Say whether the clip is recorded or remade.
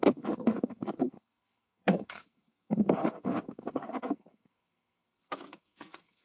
remade